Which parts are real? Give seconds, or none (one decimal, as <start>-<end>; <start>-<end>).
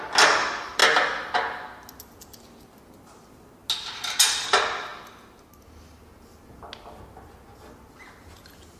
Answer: 0.0-8.8